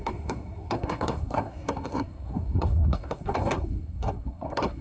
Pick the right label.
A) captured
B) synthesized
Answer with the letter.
B